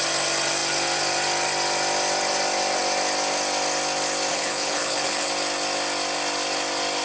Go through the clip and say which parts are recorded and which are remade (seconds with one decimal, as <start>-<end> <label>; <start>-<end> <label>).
0.0-4.3 recorded; 4.3-5.3 remade; 5.3-7.0 recorded